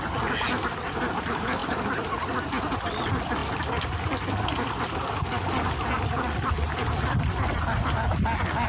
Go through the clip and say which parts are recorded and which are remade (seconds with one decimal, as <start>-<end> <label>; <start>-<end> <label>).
0.0-8.7 recorded